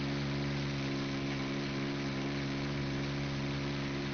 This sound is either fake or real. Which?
real